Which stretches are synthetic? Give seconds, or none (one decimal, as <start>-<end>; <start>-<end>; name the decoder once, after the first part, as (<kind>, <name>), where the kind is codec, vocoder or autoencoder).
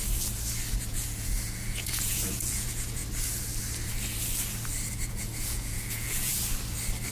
0.7-3.0 (vocoder, Vocos); 4.9-6.3